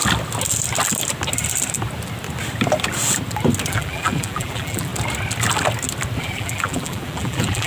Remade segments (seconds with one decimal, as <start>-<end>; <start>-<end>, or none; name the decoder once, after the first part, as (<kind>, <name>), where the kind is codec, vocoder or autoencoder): 3.7-4.9 (vocoder, BigVGAN v2); 6.2-7.7

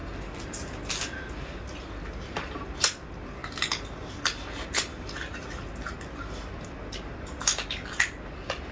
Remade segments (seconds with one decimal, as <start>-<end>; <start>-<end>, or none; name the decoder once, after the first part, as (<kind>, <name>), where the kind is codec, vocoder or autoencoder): none